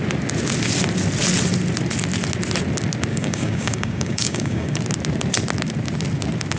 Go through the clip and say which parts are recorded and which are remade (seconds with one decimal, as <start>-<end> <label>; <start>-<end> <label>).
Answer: 0.0-3.1 recorded; 3.1-4.8 remade; 4.8-6.6 recorded